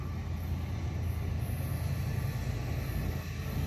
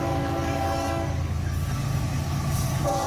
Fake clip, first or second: second